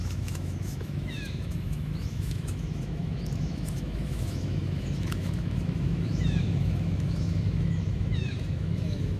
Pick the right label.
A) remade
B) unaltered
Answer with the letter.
A